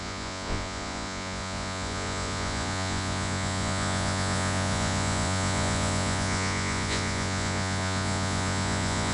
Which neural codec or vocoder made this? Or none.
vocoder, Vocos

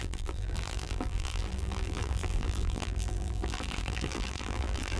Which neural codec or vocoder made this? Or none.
vocoder, BigVGAN v2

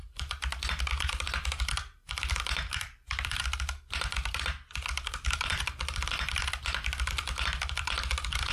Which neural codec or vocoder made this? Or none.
none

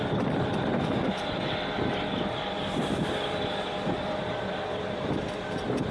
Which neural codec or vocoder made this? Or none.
vocoder, BigVGAN v2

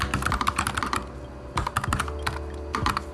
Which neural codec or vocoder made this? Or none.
none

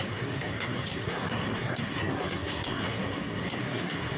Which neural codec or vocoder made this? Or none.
codec, SNAC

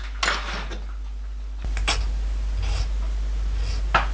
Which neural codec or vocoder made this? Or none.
none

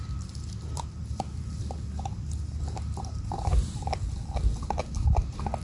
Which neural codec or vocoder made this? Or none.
none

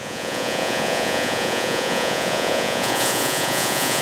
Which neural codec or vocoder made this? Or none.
vocoder, Vocos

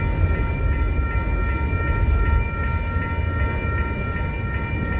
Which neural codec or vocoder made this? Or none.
none